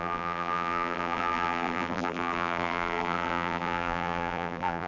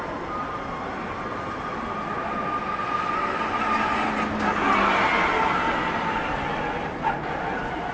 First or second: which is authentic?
second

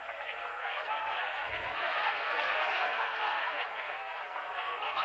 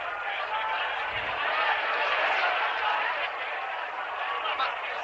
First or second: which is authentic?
second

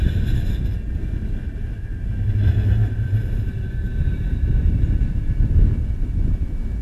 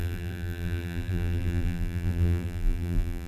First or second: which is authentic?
first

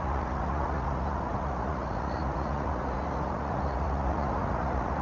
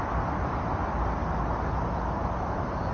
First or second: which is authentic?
second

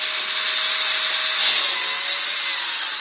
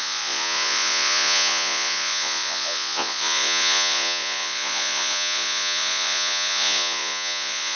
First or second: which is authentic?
first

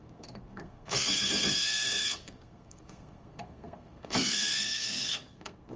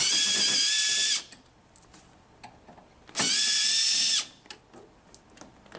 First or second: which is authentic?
second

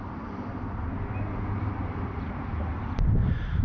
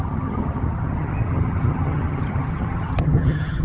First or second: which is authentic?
first